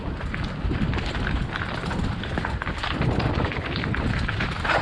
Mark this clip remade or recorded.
recorded